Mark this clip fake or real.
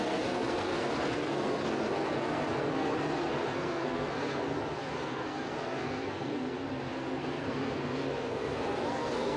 fake